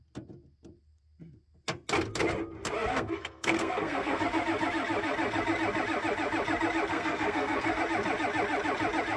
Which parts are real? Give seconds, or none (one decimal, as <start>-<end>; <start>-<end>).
0.0-2.9; 4.2-6.9; 7.8-9.2